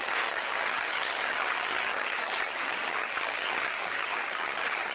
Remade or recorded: remade